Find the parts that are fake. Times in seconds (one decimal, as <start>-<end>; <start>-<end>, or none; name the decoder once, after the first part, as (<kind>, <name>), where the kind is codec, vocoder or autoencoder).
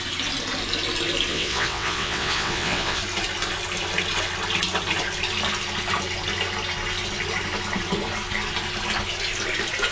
1.3-3.0 (vocoder, WaveNeXt)